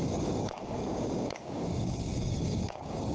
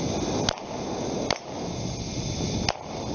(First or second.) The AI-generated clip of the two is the first